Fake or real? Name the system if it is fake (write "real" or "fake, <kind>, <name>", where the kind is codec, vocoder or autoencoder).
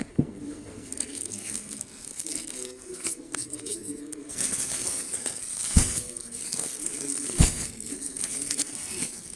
fake, codec, SNAC